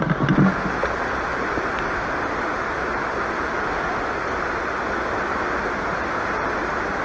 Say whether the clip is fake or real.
real